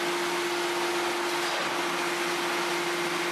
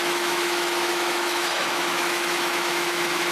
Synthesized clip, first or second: second